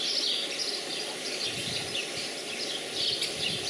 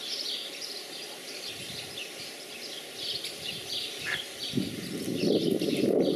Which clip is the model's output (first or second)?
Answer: second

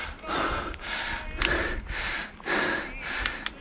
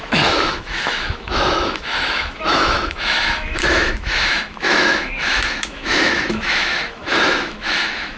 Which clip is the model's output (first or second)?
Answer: second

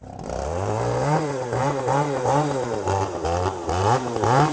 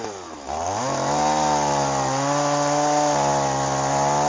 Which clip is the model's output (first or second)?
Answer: first